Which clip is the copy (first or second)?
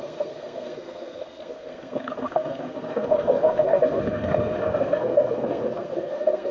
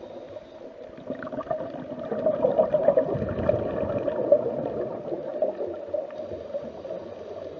first